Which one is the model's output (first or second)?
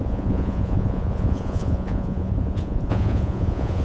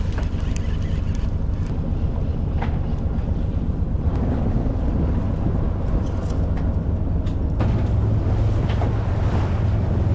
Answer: first